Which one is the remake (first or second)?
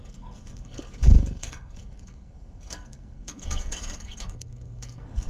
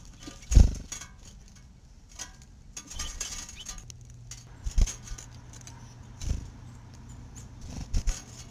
first